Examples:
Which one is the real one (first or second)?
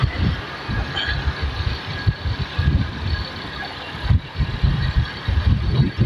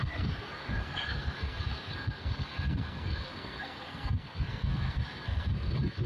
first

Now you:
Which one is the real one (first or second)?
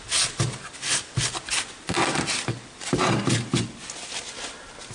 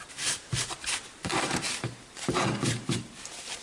first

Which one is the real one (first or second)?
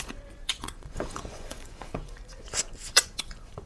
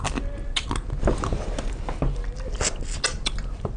second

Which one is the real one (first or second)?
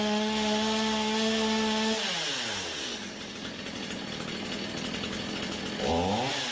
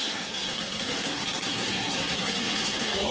first